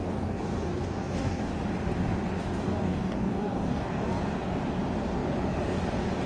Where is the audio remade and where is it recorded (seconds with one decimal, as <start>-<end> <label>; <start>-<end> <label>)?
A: 0.0-1.5 remade; 1.5-2.4 recorded; 2.4-4.2 remade; 4.2-6.3 recorded